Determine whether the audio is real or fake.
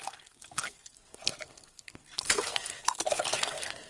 fake